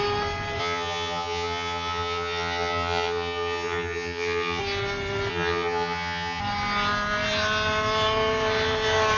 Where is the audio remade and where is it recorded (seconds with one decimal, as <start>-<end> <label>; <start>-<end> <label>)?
0.0-0.6 recorded; 0.6-4.6 remade; 4.6-5.3 recorded; 5.3-6.4 remade; 6.4-9.2 recorded